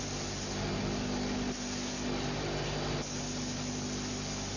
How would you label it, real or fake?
real